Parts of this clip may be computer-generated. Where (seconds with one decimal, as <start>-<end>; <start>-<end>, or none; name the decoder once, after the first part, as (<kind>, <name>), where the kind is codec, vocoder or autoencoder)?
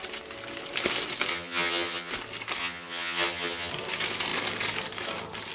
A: 1.3-2.1 (vocoder, HiFi-GAN); 2.6-3.7